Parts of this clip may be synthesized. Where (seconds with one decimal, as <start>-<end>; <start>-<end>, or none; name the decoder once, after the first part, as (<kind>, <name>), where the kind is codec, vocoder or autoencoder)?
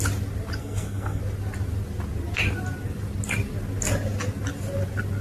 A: 0.6-1.2 (codec, SNAC)